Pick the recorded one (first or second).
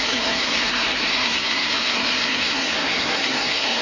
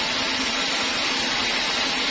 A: second